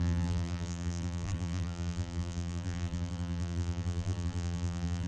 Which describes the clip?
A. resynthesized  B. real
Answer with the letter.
A